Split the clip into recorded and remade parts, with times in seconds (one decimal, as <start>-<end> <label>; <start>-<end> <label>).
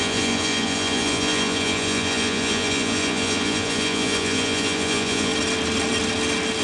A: 0.0-5.3 remade; 5.3-6.6 recorded